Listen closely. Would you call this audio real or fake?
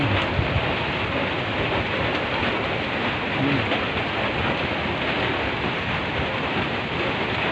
real